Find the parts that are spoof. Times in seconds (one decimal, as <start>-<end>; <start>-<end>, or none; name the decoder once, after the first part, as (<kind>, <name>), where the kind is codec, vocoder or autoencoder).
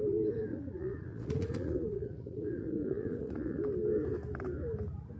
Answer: 0.5-3.6 (vocoder, Vocos)